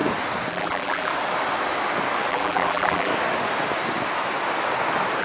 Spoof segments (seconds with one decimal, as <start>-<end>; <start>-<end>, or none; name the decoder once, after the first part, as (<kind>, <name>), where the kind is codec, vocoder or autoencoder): 0.5-1.1 (vocoder, BigVGAN v2); 2.3-3.1